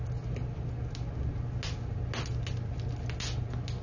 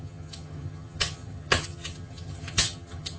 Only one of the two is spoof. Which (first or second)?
second